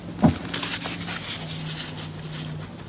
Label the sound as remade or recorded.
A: recorded